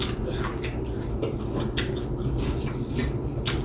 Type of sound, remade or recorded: recorded